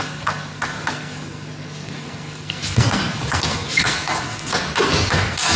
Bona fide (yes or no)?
no